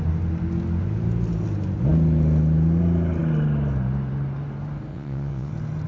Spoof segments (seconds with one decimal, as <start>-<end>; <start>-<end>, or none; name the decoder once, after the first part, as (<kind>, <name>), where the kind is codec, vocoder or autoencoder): 4.9-5.5 (vocoder, WaveNeXt)